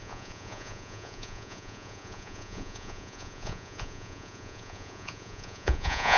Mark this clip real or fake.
fake